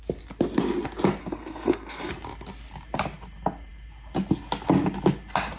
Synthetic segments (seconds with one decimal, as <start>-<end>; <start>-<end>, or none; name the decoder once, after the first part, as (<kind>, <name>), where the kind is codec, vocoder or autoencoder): 1.2-2.1 (codec, SNAC)